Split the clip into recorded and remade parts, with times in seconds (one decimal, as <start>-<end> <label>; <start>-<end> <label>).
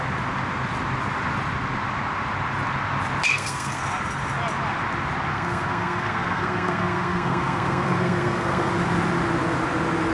0.0-3.3 recorded; 3.3-3.8 remade; 3.8-5.3 recorded; 5.3-8.7 remade; 8.7-10.1 recorded